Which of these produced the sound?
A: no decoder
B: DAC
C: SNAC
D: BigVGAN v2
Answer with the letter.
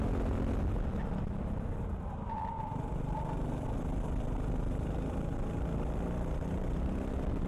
A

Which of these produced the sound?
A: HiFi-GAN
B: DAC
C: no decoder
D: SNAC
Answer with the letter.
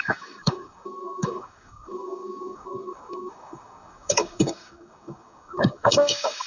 B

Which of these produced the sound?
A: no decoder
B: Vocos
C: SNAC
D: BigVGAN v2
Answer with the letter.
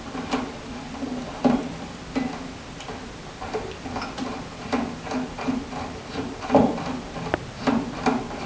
D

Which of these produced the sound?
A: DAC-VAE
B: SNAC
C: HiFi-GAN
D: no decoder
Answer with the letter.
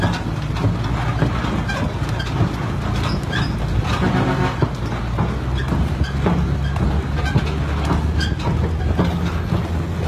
D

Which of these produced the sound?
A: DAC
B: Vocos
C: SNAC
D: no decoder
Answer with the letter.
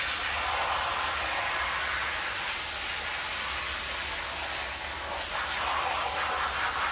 D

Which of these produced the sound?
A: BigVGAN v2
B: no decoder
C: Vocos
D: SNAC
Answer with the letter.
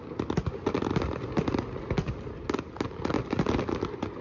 B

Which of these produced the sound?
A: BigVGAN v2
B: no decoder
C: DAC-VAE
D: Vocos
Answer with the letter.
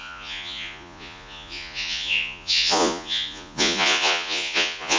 D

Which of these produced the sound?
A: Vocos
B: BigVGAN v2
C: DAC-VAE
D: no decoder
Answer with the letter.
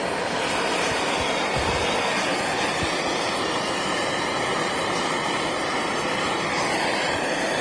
D